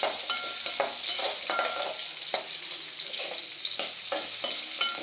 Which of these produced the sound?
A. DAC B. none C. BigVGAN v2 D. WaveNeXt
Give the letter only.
C